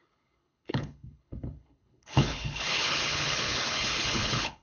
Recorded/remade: remade